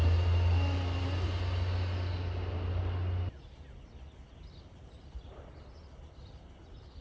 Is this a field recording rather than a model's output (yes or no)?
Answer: yes